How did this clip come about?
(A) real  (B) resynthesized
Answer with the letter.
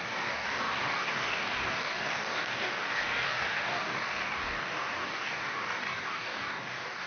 B